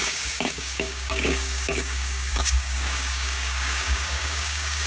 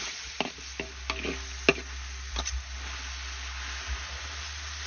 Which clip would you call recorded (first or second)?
second